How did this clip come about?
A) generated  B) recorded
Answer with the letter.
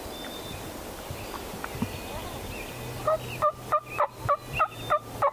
B